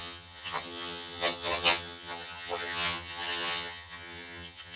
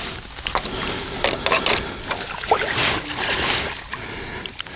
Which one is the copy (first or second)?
first